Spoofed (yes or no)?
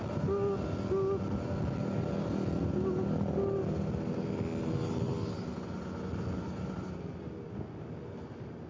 no